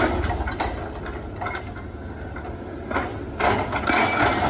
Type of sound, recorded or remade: recorded